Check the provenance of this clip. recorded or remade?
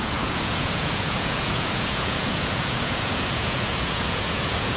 remade